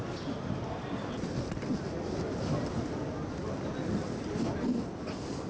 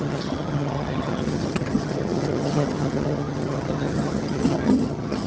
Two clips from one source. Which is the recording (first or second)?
first